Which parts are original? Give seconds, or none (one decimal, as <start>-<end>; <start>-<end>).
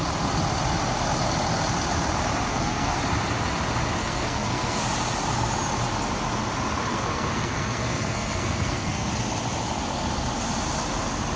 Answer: 0.0-2.5; 3.0-4.0; 4.8-6.9; 9.1-11.4